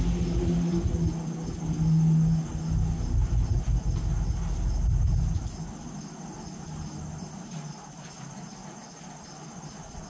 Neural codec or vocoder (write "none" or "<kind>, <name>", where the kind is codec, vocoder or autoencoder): none